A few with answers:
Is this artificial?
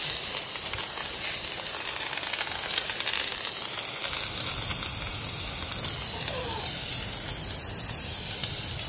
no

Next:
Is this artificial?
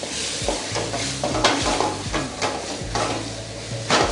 no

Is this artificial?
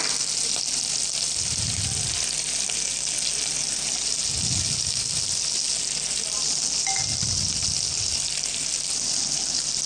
no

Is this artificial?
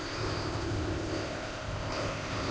yes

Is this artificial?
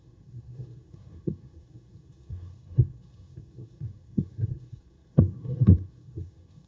yes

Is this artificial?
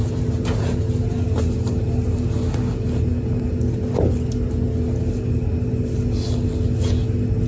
no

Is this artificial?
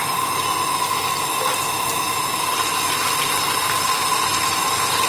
no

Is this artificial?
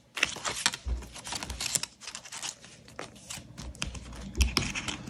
no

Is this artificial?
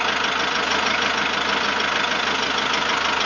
no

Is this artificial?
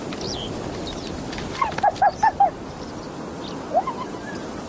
no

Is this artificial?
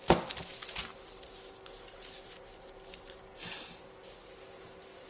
no